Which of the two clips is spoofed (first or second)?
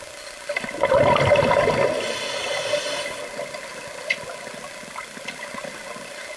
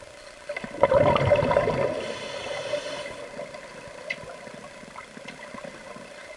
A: second